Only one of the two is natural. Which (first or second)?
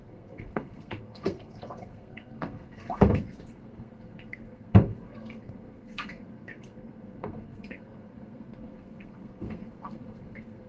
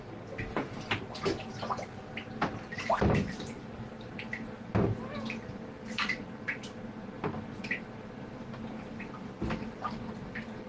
second